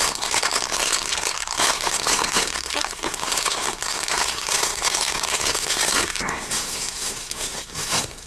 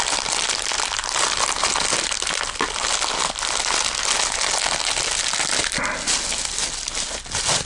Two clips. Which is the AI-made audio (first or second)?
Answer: first